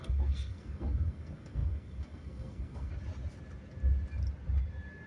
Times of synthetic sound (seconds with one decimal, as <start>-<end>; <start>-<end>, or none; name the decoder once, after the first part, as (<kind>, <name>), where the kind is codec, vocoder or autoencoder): 0.0-2.9 (codec, SNAC)